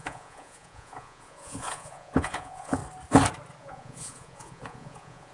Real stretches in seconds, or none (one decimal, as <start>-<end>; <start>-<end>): 2.8-3.6